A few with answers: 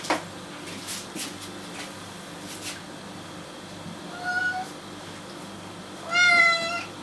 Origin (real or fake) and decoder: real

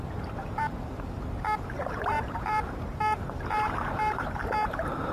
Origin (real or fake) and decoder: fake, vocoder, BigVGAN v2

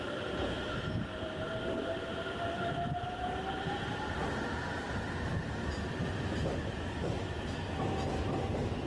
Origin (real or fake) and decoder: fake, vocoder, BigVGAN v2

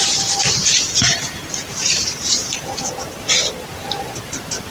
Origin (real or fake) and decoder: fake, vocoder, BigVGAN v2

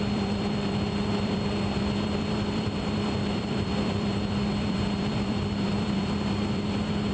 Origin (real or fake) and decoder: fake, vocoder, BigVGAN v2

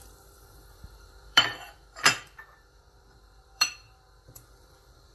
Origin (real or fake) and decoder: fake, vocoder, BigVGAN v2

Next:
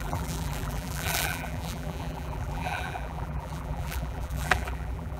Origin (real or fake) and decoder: fake, vocoder, BigVGAN v2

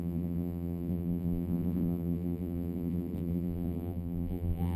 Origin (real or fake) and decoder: fake, vocoder, BigVGAN v2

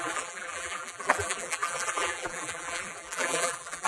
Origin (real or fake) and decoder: fake, vocoder, BigVGAN v2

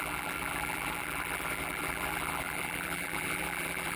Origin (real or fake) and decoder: fake, vocoder, BigVGAN v2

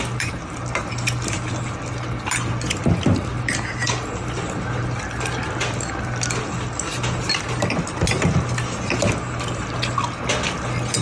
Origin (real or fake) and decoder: real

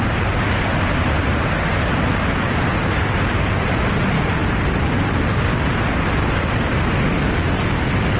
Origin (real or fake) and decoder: real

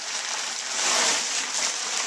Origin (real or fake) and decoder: fake, vocoder, BigVGAN v2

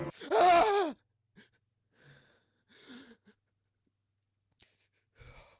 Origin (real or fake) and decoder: real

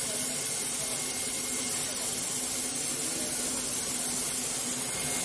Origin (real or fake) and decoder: real